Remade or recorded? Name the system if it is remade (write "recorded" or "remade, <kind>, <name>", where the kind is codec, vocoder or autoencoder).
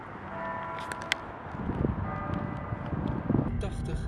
recorded